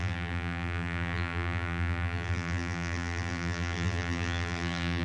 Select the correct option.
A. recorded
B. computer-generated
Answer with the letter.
B